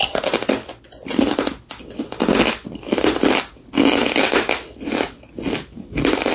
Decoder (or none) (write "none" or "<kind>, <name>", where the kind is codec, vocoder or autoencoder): none